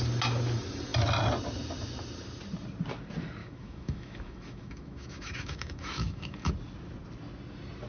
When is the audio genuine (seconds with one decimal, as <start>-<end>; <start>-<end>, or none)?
0.0-3.4; 6.5-7.9